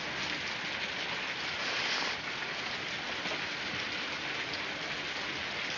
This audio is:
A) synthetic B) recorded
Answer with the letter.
B